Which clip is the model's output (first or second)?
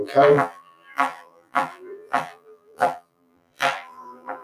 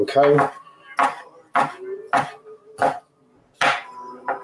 first